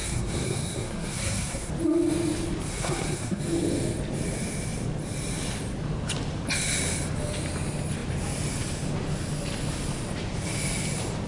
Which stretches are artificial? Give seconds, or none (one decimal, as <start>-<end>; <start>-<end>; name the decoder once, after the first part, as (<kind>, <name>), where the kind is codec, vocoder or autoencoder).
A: 0.0-1.7 (codec, SNAC); 2.7-3.4